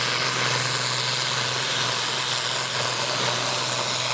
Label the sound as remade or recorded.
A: recorded